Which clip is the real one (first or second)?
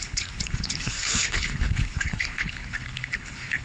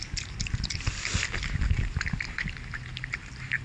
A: second